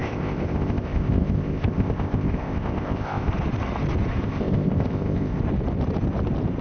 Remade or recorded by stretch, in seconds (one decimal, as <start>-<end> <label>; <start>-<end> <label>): 0.0-3.3 remade; 3.3-4.2 recorded; 4.2-5.4 remade; 5.4-6.6 recorded